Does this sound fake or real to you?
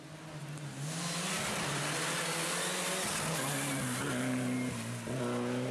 real